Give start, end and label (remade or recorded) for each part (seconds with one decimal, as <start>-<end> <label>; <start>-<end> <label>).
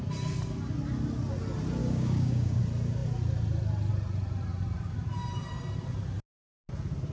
0.0-1.8 recorded; 1.8-2.6 remade; 2.6-7.1 recorded